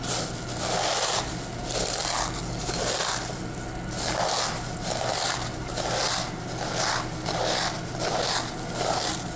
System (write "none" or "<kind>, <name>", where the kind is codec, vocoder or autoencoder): none